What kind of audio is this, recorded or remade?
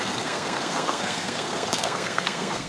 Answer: remade